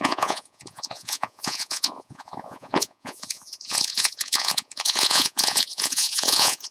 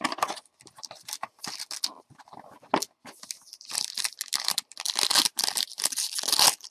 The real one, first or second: second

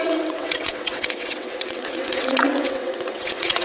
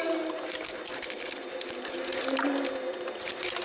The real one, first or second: second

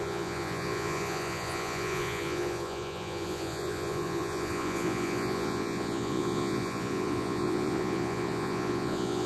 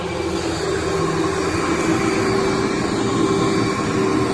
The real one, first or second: second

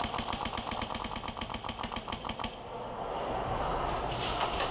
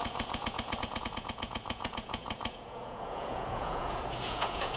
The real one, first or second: first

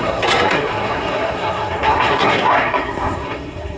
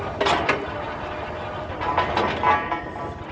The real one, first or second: second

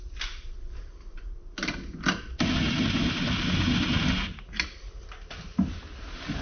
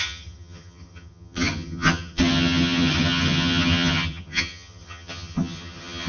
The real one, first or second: first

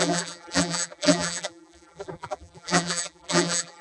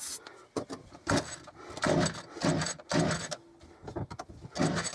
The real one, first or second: second